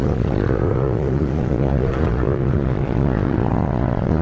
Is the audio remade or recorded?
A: remade